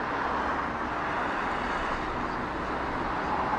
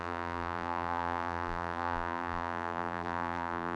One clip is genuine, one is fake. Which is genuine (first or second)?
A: first